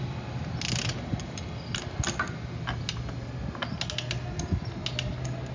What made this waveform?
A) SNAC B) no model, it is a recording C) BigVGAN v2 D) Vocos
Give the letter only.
B